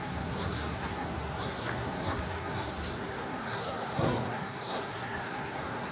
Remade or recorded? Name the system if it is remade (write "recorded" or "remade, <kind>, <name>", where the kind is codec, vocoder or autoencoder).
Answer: remade, codec, SNAC